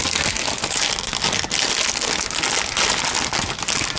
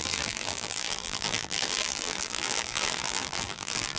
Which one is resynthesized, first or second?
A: second